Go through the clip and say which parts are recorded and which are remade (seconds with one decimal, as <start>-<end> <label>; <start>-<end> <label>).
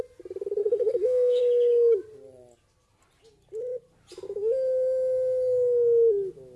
0.0-0.6 recorded; 0.6-1.4 remade; 1.4-6.6 recorded